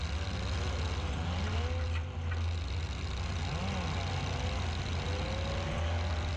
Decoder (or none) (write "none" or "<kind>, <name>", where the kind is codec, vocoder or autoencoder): none